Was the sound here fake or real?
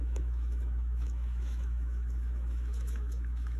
fake